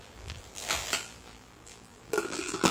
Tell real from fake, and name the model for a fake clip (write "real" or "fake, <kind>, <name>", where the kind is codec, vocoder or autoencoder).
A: fake, vocoder, BigVGAN v2